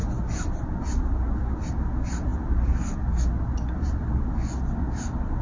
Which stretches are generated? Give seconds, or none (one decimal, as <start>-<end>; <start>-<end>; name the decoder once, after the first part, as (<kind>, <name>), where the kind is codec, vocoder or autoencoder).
none